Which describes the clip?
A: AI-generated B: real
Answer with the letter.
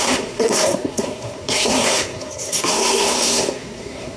A